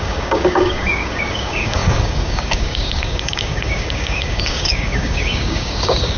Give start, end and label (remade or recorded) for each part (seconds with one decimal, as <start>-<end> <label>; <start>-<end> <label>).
0.0-6.2 remade